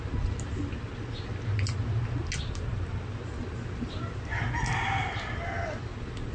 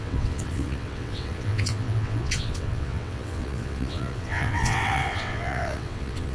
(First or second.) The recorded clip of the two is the first